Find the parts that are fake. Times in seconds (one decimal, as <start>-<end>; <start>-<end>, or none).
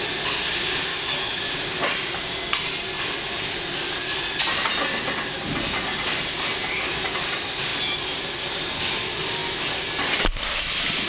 0.9-1.5